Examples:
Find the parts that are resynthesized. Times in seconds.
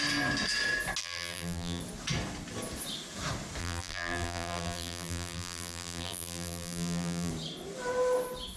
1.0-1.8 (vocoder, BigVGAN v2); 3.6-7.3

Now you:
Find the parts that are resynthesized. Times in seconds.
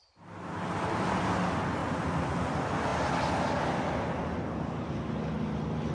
0.0-1.1 (vocoder, BigVGAN v2)